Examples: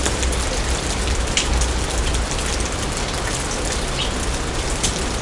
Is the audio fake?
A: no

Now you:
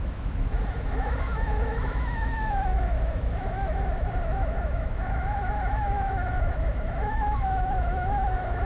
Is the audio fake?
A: yes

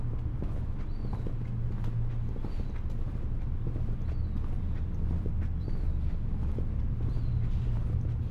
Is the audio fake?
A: no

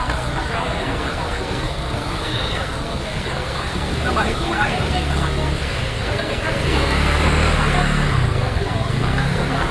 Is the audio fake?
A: yes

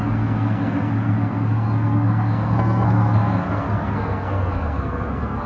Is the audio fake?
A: yes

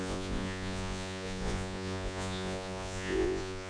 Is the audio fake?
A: yes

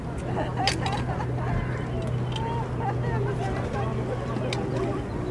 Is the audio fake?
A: no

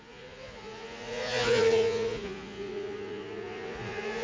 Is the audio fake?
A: yes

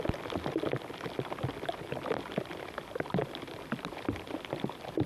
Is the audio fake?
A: no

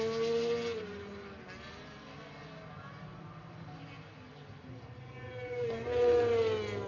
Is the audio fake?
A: no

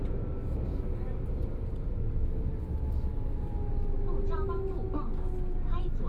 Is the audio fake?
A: no